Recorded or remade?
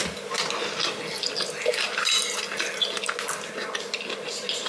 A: recorded